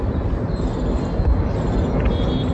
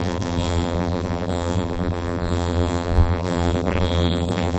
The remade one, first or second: second